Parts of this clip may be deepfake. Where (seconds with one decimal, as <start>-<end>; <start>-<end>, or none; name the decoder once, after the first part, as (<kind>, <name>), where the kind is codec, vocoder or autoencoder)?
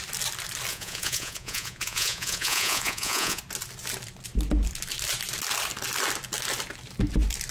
0.7-3.4 (vocoder, Vocos)